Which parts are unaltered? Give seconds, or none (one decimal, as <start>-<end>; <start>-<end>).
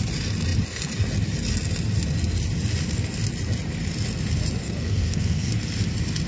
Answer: 0.0-4.6; 5.5-6.3